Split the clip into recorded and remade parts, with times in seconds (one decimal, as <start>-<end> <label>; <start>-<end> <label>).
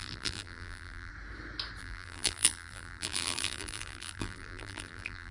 0.0-1.1 remade; 1.1-1.8 recorded; 1.8-5.3 remade